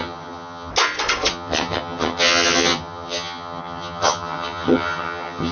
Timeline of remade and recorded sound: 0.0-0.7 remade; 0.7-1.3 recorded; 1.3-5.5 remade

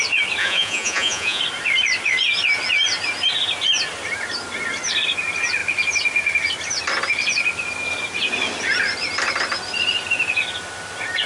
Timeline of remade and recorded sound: 0.0-0.4 recorded; 0.4-1.4 remade; 1.4-11.3 recorded

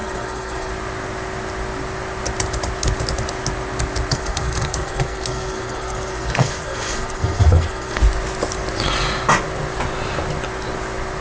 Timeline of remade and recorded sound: 0.0-0.7 remade; 0.7-4.1 recorded; 4.1-8.0 remade; 8.0-11.2 recorded

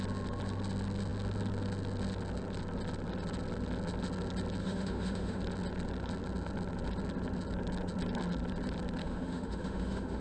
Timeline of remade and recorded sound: 0.0-4.6 recorded; 4.6-5.4 remade; 5.4-9.0 recorded; 9.0-10.2 remade